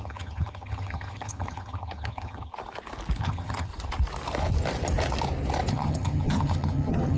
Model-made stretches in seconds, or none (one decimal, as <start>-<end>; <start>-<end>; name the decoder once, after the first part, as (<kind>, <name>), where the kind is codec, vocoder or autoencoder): 0.0-2.5 (vocoder, HiFi-GAN); 3.2-3.7; 5.7-7.2